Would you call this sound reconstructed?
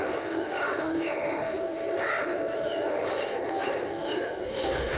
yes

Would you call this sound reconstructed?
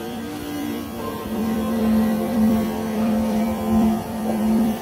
yes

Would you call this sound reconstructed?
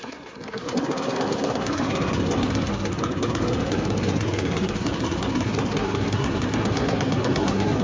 yes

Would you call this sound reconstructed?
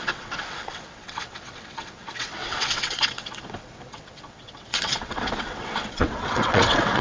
yes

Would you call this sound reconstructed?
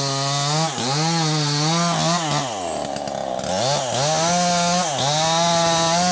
no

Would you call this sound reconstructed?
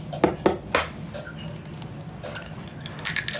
no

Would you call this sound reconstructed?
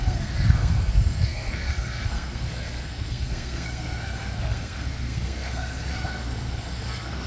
yes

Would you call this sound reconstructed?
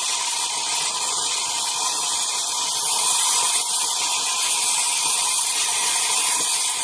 no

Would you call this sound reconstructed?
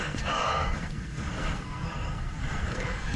yes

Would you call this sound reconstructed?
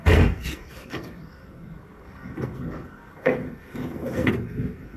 yes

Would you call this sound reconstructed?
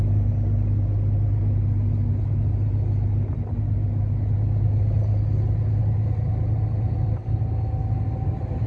no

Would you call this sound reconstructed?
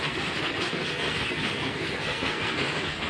yes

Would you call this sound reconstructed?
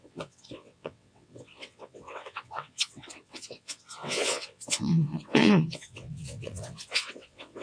yes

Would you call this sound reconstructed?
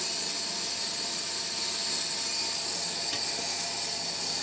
no